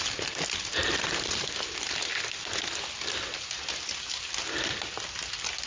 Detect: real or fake real